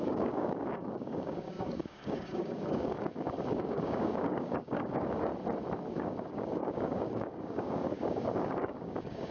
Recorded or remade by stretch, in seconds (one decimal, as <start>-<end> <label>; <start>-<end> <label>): 0.0-5.3 remade; 5.3-5.9 recorded; 5.9-9.3 remade